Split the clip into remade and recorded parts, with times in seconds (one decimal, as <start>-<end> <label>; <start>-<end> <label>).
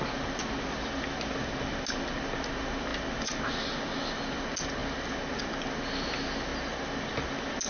0.0-7.7 recorded